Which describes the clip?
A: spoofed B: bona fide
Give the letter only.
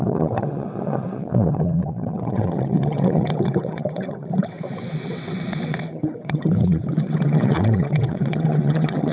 A